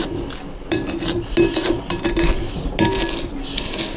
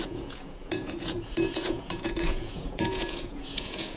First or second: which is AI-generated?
second